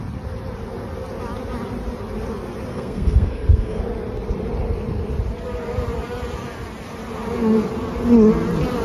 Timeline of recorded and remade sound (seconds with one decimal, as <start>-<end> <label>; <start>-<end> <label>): 0.0-2.7 recorded; 2.7-3.8 remade; 3.8-8.8 recorded